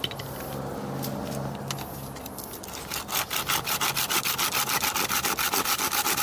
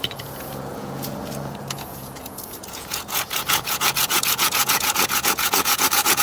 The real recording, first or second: first